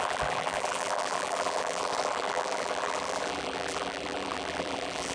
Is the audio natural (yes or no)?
no